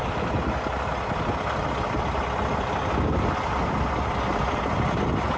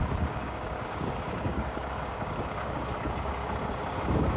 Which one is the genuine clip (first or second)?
first